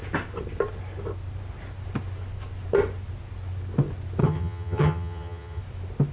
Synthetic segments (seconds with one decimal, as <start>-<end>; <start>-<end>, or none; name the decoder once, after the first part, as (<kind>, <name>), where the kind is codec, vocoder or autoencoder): 4.2-5.6 (vocoder, HiFi-GAN)